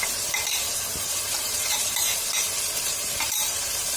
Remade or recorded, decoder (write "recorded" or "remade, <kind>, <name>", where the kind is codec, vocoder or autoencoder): remade, vocoder, BigVGAN v2